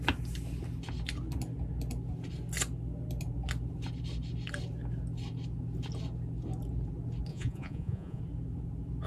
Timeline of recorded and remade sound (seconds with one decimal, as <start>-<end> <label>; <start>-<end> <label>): 0.0-7.3 recorded; 7.3-8.2 remade; 8.2-9.1 recorded